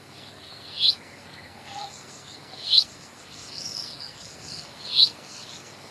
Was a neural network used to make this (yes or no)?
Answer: yes